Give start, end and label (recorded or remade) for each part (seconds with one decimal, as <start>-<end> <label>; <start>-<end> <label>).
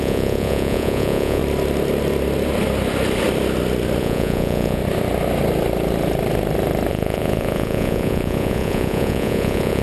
0.0-1.4 remade; 1.4-4.0 recorded; 4.0-4.8 remade; 4.8-6.9 recorded; 6.9-9.8 remade